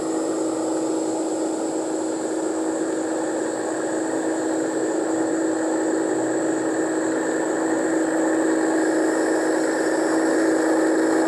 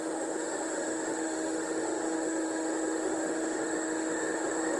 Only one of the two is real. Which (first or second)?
first